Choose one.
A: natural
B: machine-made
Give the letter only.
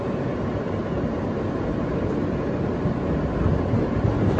A